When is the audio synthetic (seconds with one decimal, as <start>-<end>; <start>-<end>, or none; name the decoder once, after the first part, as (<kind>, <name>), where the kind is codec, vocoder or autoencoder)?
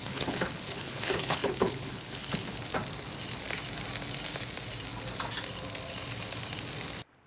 0.0-2.7 (codec, HILCodec)